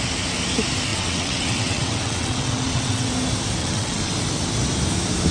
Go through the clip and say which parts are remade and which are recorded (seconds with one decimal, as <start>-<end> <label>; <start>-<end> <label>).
0.0-0.9 recorded; 0.9-3.1 remade; 3.1-3.6 recorded; 3.6-4.1 remade; 4.1-5.3 recorded